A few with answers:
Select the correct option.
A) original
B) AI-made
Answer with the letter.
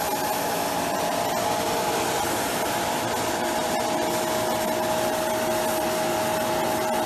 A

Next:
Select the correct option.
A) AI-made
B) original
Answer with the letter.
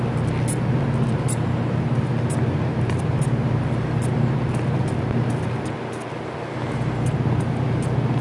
B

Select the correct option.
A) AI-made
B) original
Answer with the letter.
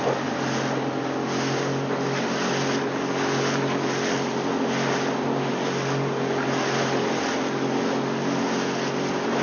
B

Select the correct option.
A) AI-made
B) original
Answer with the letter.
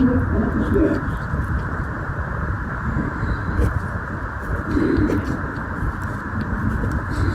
B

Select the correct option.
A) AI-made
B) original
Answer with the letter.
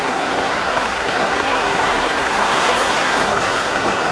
A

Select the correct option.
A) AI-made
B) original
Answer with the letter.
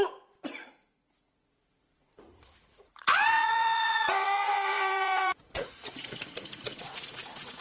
A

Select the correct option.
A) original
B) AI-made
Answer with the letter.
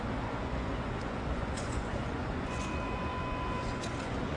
B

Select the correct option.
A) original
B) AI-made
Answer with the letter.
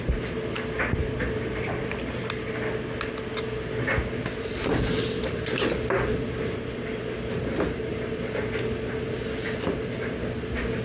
A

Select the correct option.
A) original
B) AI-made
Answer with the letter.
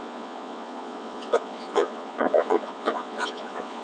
B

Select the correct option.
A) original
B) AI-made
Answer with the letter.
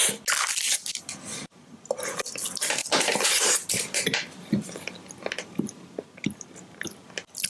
A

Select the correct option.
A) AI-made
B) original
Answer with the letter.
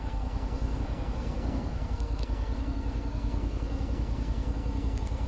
A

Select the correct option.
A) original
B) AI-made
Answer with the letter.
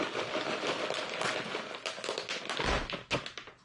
A